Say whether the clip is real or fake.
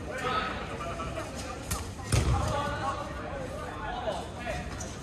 real